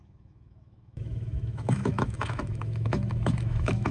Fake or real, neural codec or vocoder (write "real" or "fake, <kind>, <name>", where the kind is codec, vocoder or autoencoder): fake, autoencoder, DAC-VAE